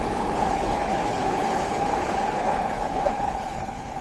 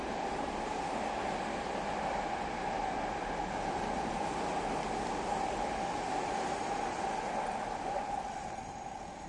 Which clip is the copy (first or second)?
first